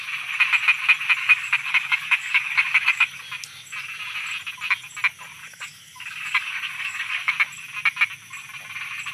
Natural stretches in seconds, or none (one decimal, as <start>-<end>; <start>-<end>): 0.0-1.2; 3.2-5.4; 7.3-9.1